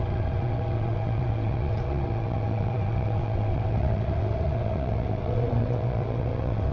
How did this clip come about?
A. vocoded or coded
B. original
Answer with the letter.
A